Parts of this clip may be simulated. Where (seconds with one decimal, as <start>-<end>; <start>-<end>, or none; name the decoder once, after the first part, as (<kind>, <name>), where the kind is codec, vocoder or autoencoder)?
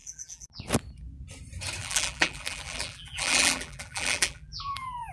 0.0-0.6 (vocoder, BigVGAN v2); 1.8-5.1